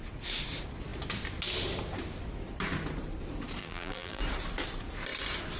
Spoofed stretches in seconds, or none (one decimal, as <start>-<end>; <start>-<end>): 3.6-4.2